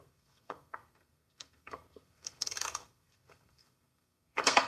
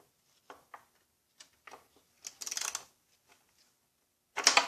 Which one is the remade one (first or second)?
first